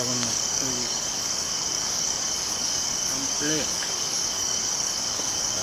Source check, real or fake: fake